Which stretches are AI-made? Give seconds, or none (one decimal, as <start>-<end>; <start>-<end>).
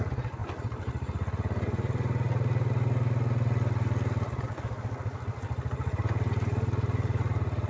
none